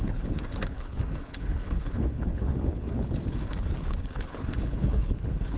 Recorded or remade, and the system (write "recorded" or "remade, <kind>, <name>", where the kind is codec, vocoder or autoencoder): remade, codec, HILCodec